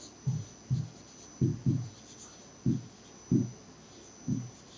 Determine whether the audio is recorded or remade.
recorded